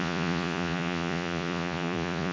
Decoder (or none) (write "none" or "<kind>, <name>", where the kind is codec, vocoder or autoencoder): vocoder, Vocos